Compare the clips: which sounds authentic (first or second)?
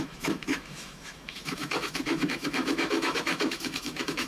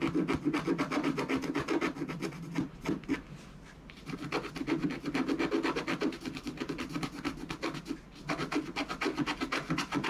second